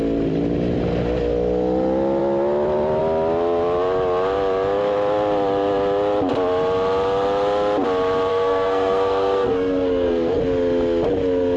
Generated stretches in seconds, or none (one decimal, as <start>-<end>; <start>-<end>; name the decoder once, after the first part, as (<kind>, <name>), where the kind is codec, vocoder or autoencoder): 8.3-10.4 (codec, SNAC)